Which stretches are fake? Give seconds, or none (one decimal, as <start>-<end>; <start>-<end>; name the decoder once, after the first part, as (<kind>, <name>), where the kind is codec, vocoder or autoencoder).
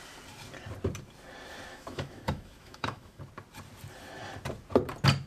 1.7-3.2 (autoencoder, DAC-VAE)